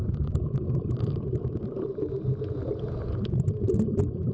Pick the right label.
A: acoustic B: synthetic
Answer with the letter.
A